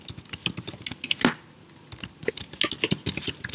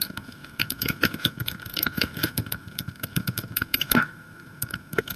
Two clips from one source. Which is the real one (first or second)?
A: first